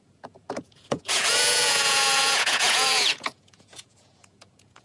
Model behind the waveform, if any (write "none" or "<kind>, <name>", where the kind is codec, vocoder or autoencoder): vocoder, Vocos